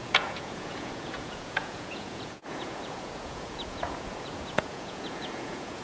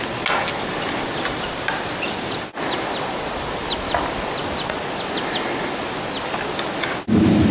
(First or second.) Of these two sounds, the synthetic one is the first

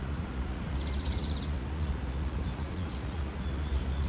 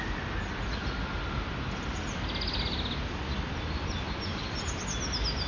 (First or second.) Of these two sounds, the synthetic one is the first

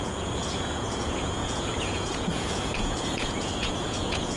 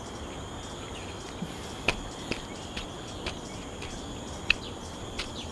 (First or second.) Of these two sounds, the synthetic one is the first